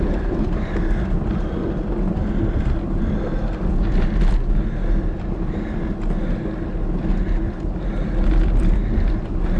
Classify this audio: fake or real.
real